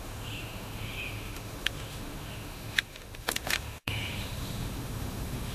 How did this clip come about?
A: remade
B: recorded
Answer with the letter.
A